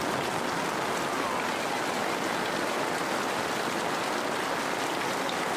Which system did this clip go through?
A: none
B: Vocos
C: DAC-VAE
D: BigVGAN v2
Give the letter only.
A